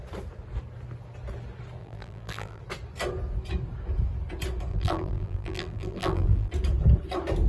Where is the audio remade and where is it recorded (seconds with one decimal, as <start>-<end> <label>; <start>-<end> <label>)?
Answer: 0.0-1.8 recorded; 1.8-2.6 remade; 2.6-4.7 recorded; 4.7-6.5 remade; 6.5-7.5 recorded

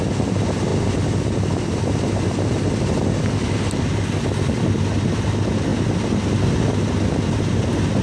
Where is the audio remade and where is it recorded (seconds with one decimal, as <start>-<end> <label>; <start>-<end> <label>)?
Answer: 0.0-0.7 recorded; 0.7-2.7 remade; 2.7-8.0 recorded

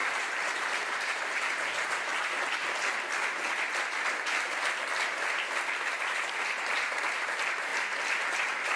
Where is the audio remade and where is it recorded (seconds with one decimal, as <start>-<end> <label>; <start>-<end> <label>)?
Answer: 0.0-2.1 remade; 2.1-6.0 recorded; 6.0-7.7 remade; 7.7-8.3 recorded; 8.3-8.8 remade

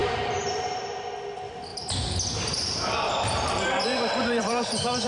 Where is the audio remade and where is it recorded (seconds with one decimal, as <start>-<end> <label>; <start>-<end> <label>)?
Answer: 0.0-1.1 remade; 1.1-1.7 recorded; 1.7-5.1 remade

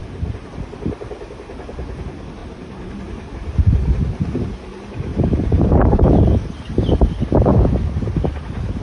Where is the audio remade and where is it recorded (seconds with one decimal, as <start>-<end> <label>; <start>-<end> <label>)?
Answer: 0.0-0.5 remade; 0.5-2.4 recorded; 2.4-3.3 remade; 3.3-5.1 recorded; 5.1-7.1 remade; 7.1-8.8 recorded